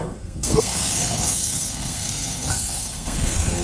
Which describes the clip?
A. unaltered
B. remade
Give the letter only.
B